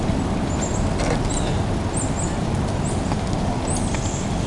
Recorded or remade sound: recorded